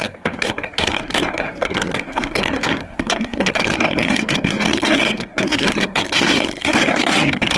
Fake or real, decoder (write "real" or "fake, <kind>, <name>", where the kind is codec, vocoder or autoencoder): fake, codec, SNAC